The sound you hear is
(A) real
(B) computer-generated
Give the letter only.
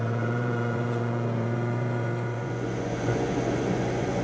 B